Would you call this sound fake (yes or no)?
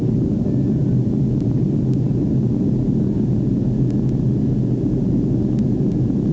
no